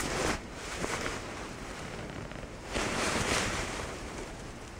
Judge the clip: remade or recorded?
remade